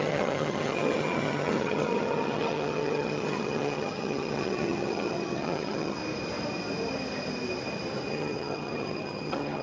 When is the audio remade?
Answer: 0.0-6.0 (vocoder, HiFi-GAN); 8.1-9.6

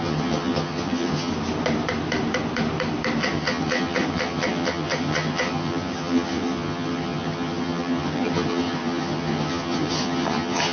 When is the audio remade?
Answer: 0.0-1.3 (vocoder, HiFi-GAN); 3.2-10.7

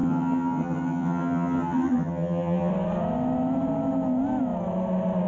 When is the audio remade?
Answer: 0.0-2.7 (vocoder, HiFi-GAN)

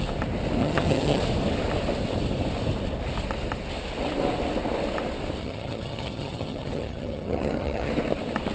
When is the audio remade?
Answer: 0.6-1.2 (vocoder, HiFi-GAN); 5.4-7.9

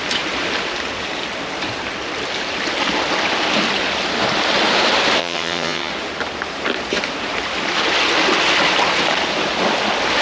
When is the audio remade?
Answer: 5.2-5.9 (vocoder, HiFi-GAN)

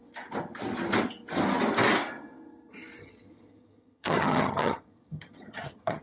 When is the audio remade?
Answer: 3.0-6.0 (vocoder, HiFi-GAN)

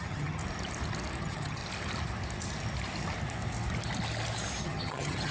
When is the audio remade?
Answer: 0.0-0.4 (vocoder, HiFi-GAN); 1.2-1.6; 4.6-5.3